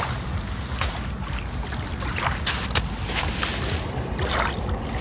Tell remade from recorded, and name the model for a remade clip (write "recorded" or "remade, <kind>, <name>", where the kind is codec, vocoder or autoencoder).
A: recorded